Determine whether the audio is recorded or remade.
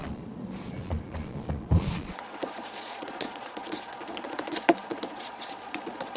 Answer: remade